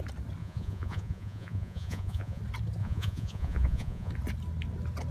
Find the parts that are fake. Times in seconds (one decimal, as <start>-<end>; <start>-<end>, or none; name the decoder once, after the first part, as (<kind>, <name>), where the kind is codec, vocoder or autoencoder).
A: 0.4-2.4 (vocoder, Vocos); 2.8-4.1